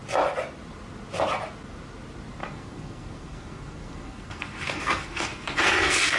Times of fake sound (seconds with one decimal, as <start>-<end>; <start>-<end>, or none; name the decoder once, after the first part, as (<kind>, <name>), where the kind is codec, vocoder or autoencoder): 2.4-6.2 (codec, SNAC)